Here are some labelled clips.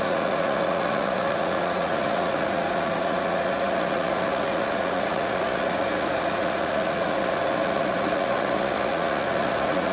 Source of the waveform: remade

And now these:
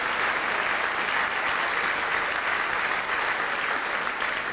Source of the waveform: recorded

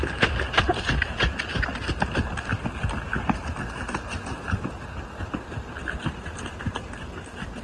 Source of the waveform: recorded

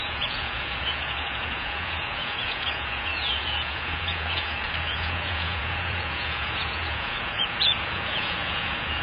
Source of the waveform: remade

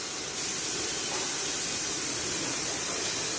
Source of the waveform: recorded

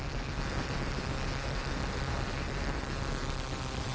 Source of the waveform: recorded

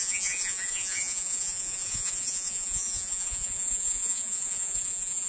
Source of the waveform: remade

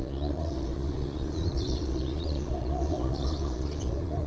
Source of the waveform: remade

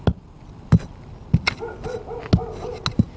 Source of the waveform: recorded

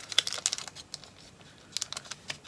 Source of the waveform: recorded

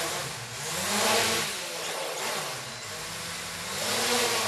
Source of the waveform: recorded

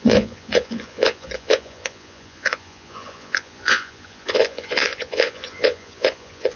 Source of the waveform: remade